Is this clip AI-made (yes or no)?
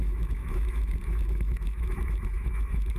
yes